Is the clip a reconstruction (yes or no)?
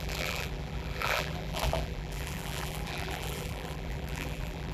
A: yes